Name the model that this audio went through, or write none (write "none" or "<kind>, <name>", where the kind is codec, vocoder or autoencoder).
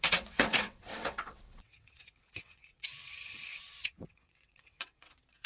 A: vocoder, WaveNeXt